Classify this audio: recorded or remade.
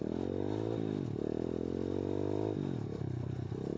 recorded